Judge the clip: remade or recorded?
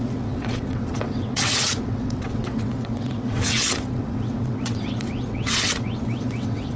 remade